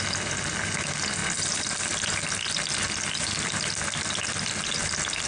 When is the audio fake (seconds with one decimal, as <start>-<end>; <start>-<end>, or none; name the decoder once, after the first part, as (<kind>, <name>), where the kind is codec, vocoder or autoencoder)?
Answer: none